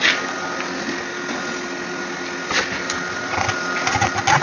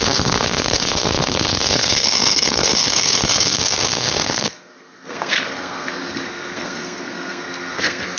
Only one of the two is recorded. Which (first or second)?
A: first